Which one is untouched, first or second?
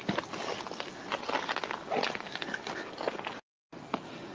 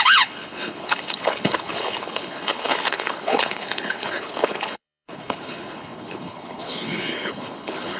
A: first